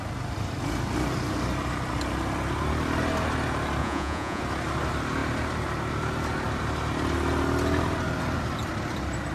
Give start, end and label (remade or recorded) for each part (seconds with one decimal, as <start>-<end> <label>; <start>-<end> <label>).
0.0-3.8 recorded; 3.8-4.4 remade; 4.4-9.3 recorded

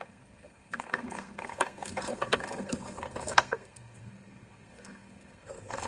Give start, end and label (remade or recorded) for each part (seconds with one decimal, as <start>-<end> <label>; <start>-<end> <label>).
0.0-5.9 remade

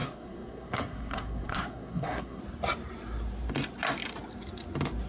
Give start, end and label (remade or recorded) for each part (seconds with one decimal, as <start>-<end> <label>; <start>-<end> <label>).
0.0-2.4 remade; 2.4-5.1 recorded

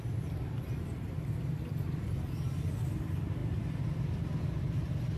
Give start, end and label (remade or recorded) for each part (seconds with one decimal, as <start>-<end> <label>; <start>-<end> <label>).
0.0-5.2 recorded

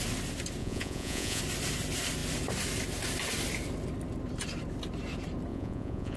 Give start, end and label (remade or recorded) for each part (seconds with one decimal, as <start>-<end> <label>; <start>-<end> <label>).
0.0-0.6 recorded; 0.6-1.4 remade; 1.4-5.5 recorded; 5.5-6.2 remade